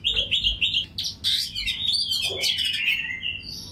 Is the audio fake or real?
real